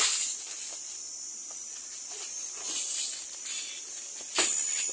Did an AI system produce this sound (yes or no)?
no